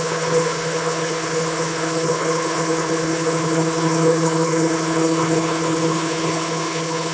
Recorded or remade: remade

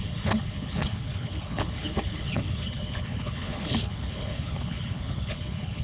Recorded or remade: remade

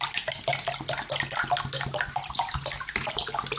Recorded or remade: recorded